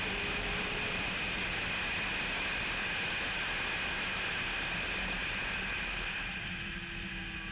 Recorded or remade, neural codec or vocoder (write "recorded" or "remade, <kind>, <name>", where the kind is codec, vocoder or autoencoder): recorded